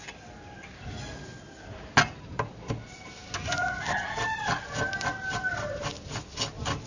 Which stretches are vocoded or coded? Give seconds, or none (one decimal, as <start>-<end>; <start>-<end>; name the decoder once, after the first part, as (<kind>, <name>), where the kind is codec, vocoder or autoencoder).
none